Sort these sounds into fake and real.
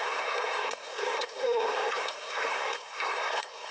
fake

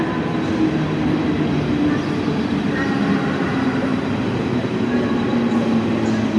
real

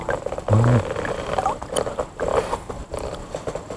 real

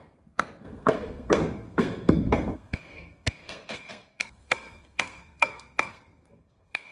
fake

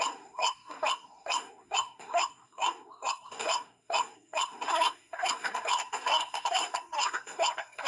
fake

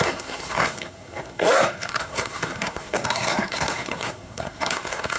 fake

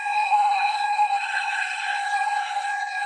fake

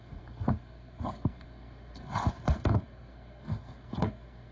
fake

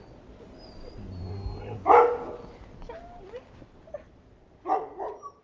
real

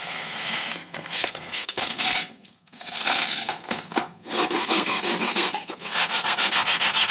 fake